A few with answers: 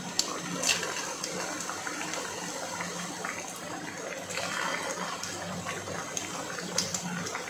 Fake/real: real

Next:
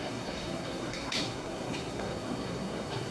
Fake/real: fake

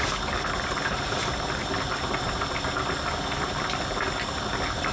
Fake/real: real